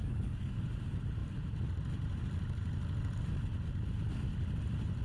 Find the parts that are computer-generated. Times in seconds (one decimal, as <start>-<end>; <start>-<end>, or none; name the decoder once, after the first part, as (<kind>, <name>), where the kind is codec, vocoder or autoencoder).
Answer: 0.0-0.6 (codec, DAC)